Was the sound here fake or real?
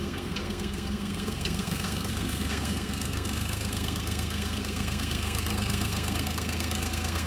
fake